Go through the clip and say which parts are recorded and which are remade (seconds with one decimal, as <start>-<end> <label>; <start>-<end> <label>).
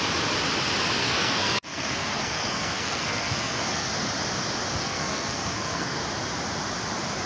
0.0-1.0 recorded; 1.0-3.9 remade; 3.9-4.8 recorded; 4.8-6.0 remade; 6.0-7.3 recorded